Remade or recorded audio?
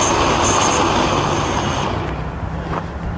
recorded